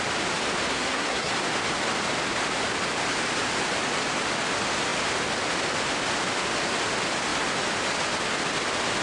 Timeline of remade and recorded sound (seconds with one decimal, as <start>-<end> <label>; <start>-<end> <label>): 0.0-0.7 recorded; 0.7-1.3 remade; 1.3-9.0 recorded